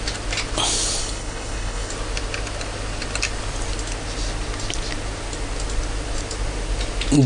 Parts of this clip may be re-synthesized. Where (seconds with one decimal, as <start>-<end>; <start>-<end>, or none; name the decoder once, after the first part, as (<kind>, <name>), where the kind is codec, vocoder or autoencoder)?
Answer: 1.0-1.9 (codec, HILCodec)